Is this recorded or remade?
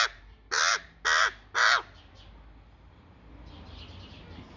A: recorded